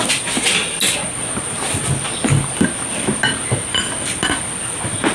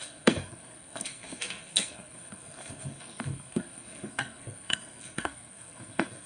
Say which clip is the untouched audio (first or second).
first